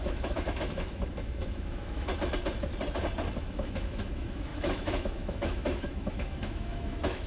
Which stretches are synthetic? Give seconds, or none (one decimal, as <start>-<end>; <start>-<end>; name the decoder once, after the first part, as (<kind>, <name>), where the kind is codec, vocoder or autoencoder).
0.0-2.1 (autoencoder, DAC-VAE); 3.4-7.3